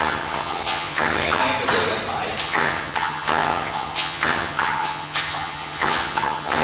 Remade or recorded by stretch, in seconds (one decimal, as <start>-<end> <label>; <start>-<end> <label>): 0.0-1.4 remade; 1.4-2.4 recorded; 2.4-6.6 remade